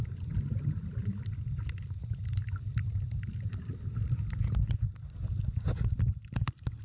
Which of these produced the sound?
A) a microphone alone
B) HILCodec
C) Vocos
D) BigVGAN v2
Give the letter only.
A